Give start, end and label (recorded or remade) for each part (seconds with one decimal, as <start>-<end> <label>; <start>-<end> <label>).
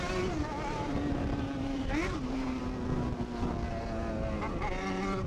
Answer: 0.0-2.6 remade; 2.6-4.6 recorded; 4.6-5.3 remade